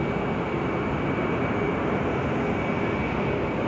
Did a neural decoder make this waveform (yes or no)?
no